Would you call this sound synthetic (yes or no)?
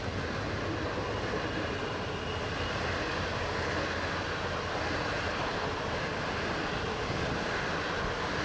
no